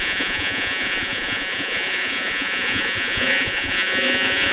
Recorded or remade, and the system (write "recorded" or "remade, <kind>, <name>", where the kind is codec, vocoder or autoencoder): remade, vocoder, Vocos